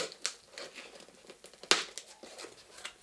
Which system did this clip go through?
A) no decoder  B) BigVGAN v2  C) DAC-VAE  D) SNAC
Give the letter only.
A